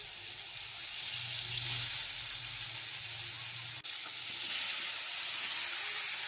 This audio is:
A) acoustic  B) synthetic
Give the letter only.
A